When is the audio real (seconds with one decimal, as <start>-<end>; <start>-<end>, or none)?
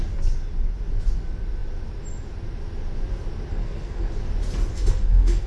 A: 0.0-3.5; 4.1-4.7